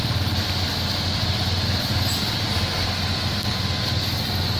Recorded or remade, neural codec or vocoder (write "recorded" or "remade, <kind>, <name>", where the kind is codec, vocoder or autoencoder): recorded